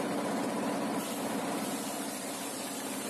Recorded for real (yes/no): no